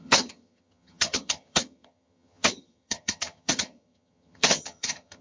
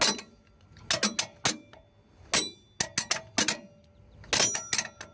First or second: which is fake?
first